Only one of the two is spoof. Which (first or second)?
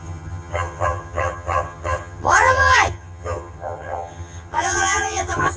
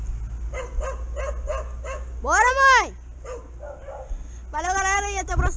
first